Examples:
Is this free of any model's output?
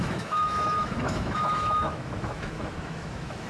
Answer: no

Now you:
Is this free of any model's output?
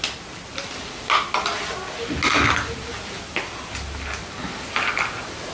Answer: yes